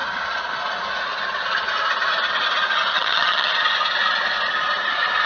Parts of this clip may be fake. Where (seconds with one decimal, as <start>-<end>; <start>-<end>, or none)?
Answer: 2.9-3.5

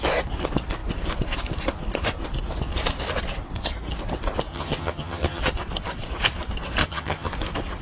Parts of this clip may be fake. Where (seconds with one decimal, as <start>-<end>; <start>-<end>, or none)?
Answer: 4.5-5.4; 6.8-7.3